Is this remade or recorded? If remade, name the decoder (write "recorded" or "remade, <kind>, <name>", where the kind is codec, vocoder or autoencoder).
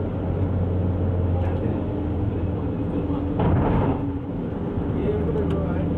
recorded